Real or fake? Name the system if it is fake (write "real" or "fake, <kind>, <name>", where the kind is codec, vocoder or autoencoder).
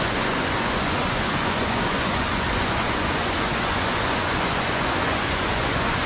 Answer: fake, vocoder, Vocos